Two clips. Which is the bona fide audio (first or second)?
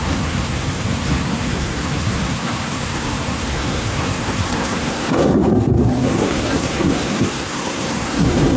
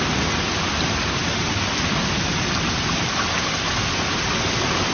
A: second